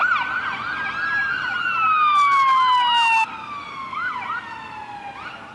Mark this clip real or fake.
real